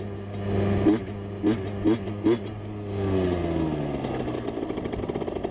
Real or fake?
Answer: real